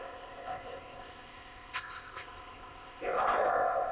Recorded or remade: remade